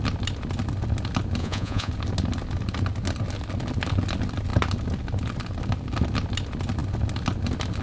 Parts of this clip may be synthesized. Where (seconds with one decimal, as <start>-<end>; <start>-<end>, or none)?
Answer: 1.4-1.9